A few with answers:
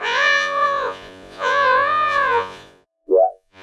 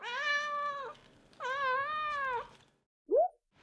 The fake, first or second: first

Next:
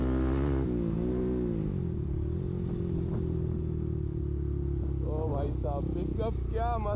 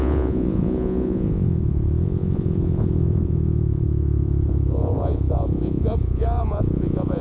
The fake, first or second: second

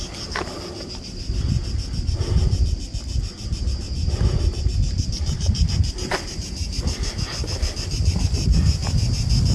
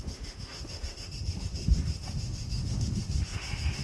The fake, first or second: second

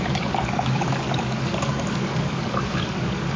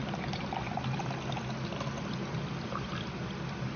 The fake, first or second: first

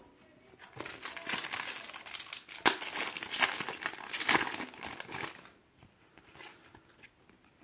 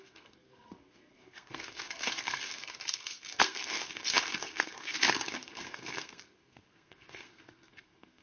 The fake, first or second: second